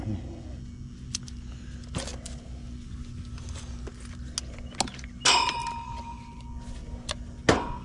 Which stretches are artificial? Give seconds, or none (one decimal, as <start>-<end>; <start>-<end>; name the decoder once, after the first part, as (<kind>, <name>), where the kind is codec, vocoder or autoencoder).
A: none

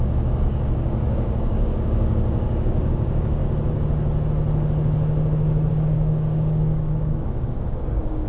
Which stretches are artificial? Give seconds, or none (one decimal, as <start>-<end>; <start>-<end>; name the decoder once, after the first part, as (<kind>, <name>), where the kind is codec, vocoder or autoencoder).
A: 0.0-3.4 (codec, DAC); 5.7-8.3

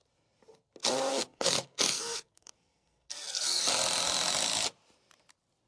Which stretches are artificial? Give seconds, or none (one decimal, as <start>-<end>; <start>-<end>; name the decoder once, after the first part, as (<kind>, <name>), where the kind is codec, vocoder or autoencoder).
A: 1.1-3.7 (codec, SNAC)